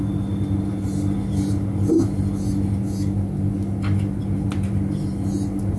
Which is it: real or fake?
real